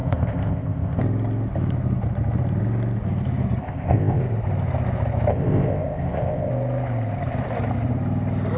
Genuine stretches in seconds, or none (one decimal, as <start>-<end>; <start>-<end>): 1.0-3.6; 4.2-5.3; 6.5-8.6